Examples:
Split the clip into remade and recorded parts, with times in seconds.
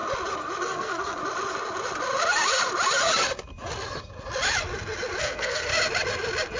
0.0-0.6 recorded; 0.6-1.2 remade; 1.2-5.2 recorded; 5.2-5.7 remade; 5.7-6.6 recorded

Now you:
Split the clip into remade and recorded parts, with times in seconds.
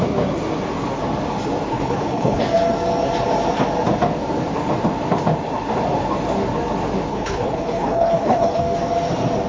0.0-1.7 recorded; 1.7-2.4 remade; 2.4-7.1 recorded; 7.1-8.6 remade; 8.6-9.5 recorded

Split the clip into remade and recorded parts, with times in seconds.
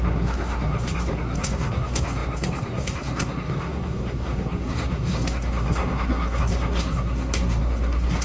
0.0-8.2 remade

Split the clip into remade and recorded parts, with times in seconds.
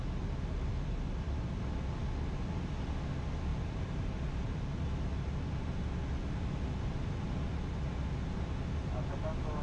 0.0-3.5 recorded; 3.5-4.5 remade; 4.5-9.6 recorded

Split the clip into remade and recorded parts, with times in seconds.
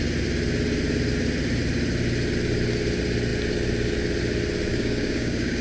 0.0-4.7 recorded; 4.7-5.6 remade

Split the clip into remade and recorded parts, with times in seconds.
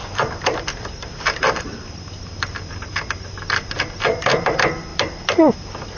0.0-6.0 recorded